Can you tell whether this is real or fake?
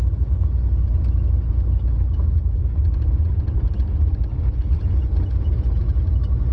real